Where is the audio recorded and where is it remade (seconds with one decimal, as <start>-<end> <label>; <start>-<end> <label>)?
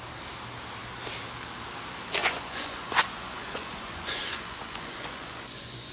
0.0-2.2 recorded; 2.2-5.9 remade